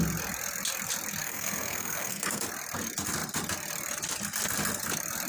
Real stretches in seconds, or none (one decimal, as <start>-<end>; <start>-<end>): 0.0-1.2; 2.4-5.3